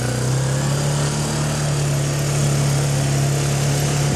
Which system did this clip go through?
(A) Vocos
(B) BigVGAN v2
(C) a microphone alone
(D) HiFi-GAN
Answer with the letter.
C